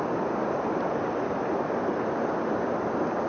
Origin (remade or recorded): recorded